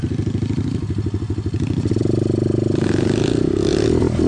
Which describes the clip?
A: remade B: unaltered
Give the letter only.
B